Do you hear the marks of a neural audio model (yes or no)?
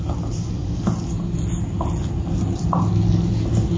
no